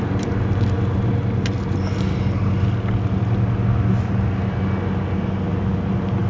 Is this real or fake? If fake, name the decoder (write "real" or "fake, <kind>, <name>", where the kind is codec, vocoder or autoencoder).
real